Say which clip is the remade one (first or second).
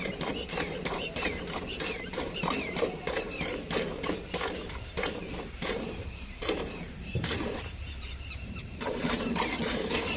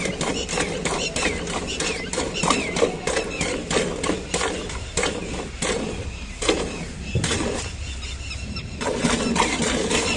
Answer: first